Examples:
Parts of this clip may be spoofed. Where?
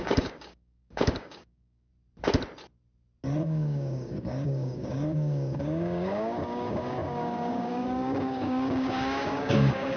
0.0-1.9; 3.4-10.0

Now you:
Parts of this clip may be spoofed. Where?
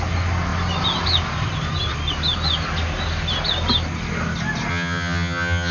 4.7-5.7